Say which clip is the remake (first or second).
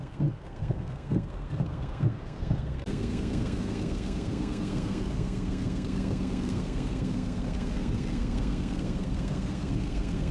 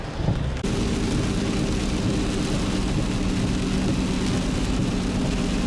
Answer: first